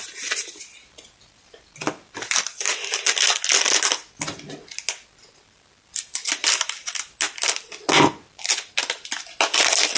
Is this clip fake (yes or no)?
no